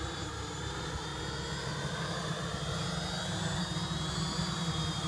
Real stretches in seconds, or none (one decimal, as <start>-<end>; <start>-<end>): 1.1-3.6